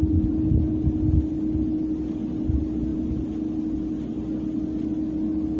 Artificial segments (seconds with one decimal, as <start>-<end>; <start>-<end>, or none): none